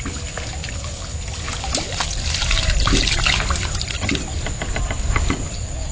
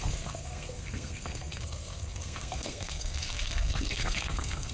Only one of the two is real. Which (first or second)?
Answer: first